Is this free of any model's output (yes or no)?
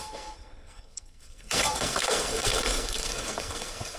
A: no